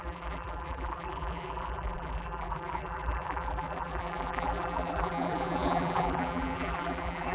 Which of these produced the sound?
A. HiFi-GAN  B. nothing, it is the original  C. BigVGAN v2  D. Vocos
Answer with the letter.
C